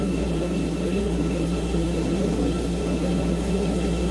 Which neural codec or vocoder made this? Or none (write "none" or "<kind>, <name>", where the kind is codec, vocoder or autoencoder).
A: codec, SNAC